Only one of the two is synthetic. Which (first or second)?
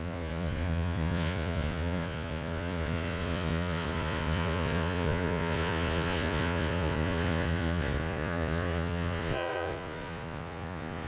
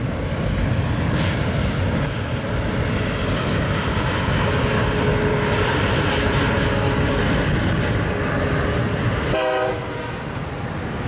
first